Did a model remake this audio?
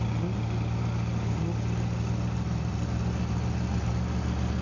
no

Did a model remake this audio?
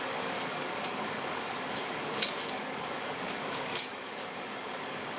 yes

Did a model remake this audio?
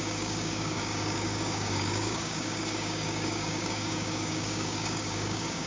yes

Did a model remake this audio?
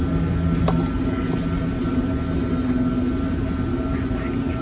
no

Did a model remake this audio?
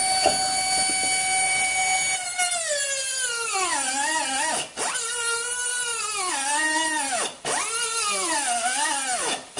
no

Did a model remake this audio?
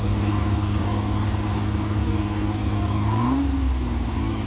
yes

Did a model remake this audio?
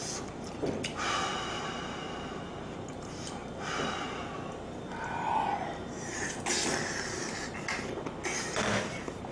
no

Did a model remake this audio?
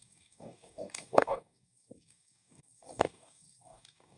yes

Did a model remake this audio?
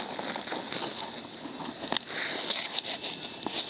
no